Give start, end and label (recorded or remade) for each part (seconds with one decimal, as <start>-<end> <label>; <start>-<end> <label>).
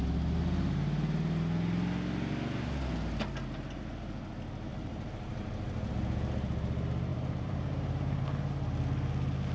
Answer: 0.0-4.7 recorded; 4.7-5.9 remade; 5.9-7.1 recorded; 7.1-8.2 remade; 8.2-9.5 recorded